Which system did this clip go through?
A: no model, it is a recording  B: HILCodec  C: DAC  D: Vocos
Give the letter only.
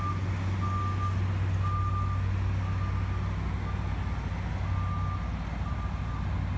A